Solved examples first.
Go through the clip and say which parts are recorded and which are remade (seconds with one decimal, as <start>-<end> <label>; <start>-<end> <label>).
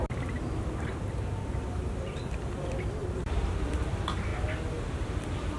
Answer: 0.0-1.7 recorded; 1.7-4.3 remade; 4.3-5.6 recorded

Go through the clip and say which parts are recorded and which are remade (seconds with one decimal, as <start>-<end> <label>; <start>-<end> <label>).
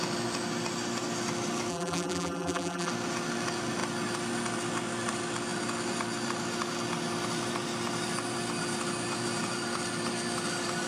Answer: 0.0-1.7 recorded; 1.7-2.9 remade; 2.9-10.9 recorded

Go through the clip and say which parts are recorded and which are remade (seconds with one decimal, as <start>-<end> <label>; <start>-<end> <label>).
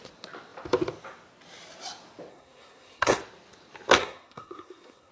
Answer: 0.0-2.3 recorded; 2.3-3.2 remade; 3.2-4.0 recorded; 4.0-5.1 remade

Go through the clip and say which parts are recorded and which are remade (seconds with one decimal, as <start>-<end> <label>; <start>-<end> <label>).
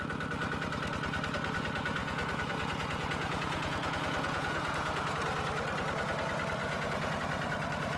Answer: 0.0-2.0 recorded; 2.0-5.1 remade; 5.1-6.6 recorded; 6.6-7.2 remade; 7.2-8.0 recorded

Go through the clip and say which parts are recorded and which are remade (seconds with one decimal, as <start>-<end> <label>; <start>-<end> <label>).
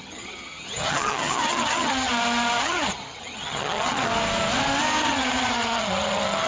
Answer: 0.0-2.1 remade; 2.1-2.6 recorded; 2.6-4.1 remade; 4.1-5.0 recorded; 5.0-6.5 remade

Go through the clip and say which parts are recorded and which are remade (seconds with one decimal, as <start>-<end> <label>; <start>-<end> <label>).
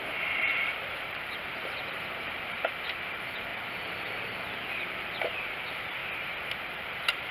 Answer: 0.0-6.0 remade; 6.0-7.3 recorded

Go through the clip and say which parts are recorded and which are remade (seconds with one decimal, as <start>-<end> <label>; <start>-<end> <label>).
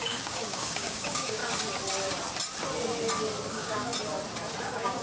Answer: 0.0-1.4 remade; 1.4-3.5 recorded; 3.5-3.9 remade; 3.9-4.6 recorded; 4.6-5.0 remade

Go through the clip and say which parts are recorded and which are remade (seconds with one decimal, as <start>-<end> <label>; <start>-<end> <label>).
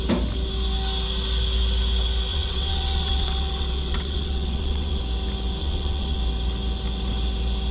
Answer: 0.0-2.3 recorded; 2.3-5.0 remade; 5.0-5.6 recorded; 5.6-6.2 remade; 6.2-7.7 recorded